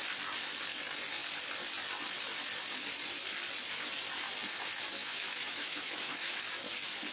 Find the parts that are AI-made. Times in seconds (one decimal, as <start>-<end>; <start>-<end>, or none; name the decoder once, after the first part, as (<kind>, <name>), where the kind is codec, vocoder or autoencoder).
5.0-6.5 (autoencoder, DAC-VAE)